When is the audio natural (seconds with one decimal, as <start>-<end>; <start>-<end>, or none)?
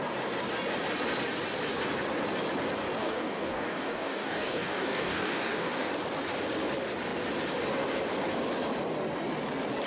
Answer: 0.0-3.0; 5.9-9.9